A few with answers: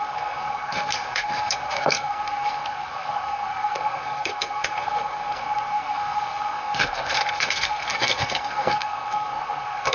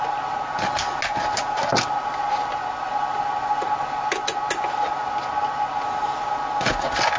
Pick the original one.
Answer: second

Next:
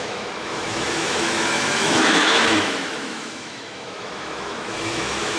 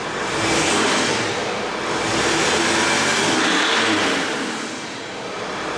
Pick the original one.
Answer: second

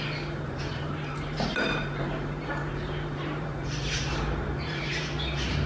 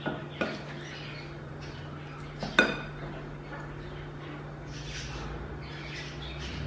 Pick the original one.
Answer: second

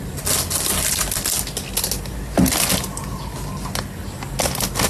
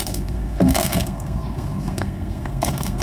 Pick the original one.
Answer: first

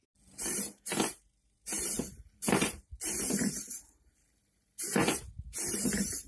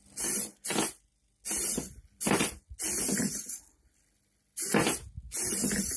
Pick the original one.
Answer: second